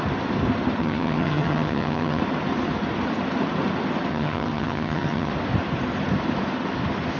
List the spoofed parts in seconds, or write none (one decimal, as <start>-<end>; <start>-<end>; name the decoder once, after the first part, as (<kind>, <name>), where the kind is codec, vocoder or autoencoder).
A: 0.8-2.2 (vocoder, HiFi-GAN); 4.1-5.3